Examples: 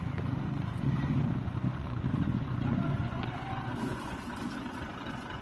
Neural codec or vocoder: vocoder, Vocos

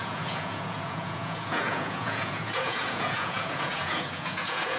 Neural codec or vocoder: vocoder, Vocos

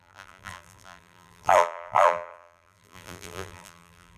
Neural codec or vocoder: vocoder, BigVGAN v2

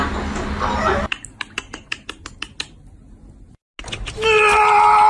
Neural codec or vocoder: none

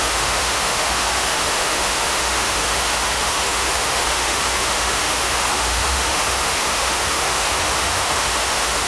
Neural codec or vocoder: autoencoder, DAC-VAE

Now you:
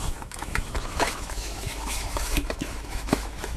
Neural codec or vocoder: autoencoder, DAC-VAE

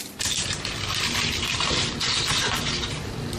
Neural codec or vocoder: none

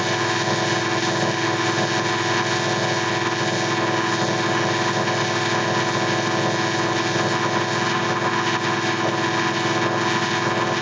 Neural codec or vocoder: none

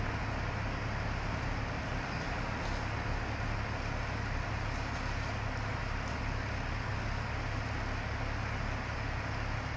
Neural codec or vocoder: none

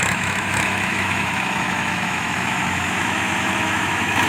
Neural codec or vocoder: autoencoder, DAC-VAE